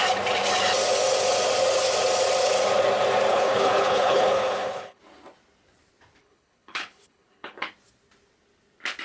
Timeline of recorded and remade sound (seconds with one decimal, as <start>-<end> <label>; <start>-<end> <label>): 0.0-3.3 recorded; 3.3-5.0 remade; 5.0-6.2 recorded; 6.2-7.7 remade; 7.7-9.0 recorded